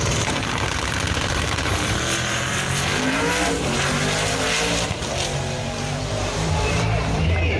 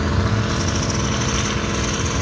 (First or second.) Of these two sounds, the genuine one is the second